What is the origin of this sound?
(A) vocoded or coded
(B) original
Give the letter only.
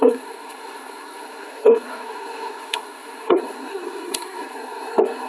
A